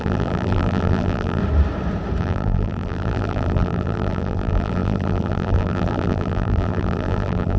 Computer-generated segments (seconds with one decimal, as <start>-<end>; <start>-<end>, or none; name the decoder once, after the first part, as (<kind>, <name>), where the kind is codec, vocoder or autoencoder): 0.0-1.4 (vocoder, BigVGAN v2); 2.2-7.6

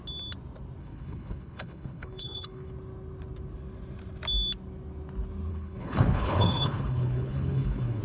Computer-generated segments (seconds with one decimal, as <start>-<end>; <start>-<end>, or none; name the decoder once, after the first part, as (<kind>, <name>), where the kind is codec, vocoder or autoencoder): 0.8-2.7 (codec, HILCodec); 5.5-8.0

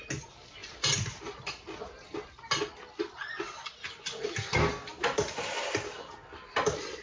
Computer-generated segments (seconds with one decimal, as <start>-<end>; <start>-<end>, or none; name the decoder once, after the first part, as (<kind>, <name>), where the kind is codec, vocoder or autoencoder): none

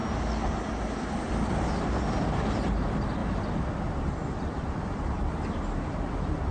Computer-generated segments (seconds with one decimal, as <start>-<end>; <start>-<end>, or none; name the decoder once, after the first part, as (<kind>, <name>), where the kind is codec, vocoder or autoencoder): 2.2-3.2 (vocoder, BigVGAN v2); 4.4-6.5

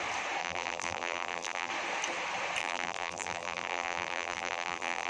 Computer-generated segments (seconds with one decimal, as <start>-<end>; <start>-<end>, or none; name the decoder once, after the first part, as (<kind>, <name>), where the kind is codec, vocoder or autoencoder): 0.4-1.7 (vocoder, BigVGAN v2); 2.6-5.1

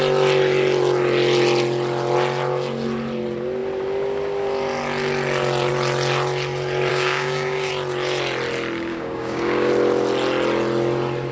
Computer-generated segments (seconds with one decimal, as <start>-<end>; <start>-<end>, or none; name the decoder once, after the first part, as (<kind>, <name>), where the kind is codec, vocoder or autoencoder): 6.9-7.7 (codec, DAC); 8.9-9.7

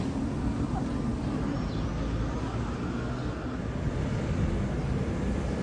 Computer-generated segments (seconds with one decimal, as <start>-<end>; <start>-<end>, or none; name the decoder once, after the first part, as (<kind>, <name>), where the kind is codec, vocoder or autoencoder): 0.0-1.1 (vocoder, BigVGAN v2); 3.6-5.6

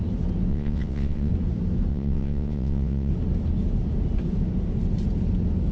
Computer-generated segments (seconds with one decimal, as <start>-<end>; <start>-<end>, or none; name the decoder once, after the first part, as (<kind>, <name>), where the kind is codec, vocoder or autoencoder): 0.5-1.3 (vocoder, WaveNeXt); 1.9-3.1